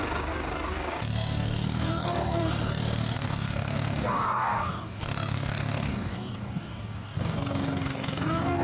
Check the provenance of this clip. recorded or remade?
remade